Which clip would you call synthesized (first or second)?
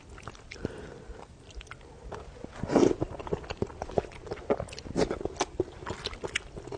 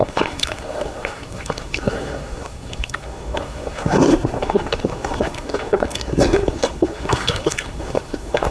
second